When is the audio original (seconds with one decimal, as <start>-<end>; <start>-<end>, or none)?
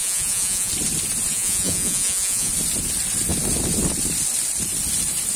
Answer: 0.7-1.3; 2.5-5.4